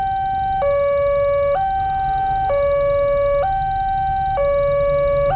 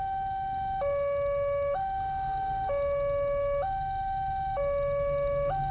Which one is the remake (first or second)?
second